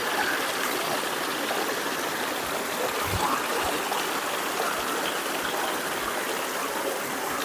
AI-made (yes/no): no